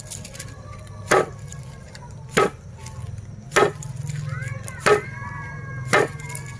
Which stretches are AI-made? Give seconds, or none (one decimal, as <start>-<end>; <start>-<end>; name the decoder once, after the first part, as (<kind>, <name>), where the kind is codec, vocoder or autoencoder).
none